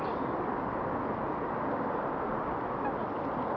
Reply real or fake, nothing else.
real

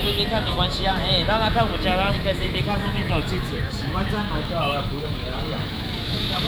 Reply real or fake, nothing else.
fake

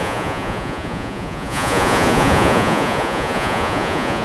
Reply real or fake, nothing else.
fake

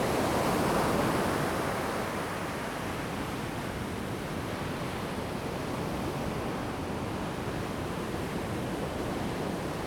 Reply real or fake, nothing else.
real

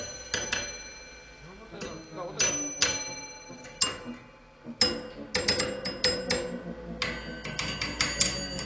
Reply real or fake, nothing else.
real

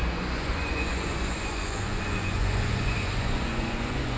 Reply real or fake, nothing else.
fake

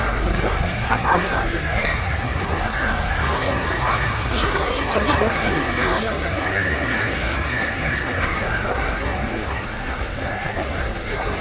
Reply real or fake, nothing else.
fake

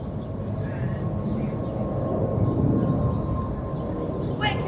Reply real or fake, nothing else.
real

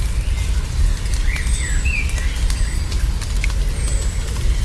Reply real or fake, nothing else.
real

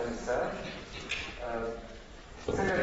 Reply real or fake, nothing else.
real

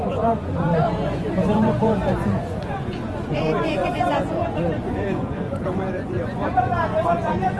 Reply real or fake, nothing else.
fake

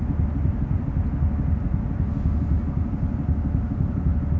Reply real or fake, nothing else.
real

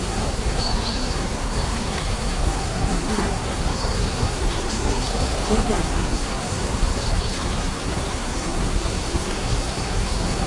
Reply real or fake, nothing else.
fake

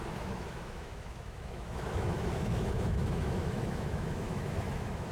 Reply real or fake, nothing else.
fake